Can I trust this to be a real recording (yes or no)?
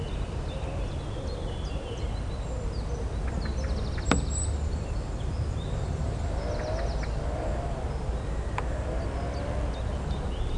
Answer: yes